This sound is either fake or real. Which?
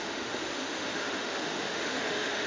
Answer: fake